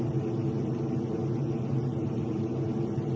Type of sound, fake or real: real